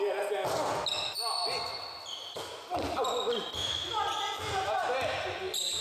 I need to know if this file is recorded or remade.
recorded